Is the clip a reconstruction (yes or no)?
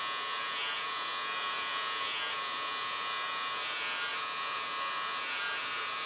yes